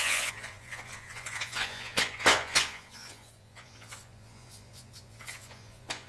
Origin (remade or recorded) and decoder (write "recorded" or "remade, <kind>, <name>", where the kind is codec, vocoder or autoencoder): remade, vocoder, Vocos